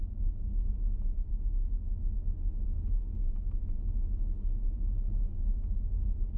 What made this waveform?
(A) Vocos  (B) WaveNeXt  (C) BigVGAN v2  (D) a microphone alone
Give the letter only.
D